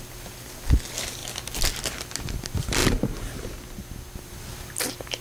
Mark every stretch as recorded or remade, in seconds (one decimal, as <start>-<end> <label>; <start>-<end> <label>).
0.0-5.2 recorded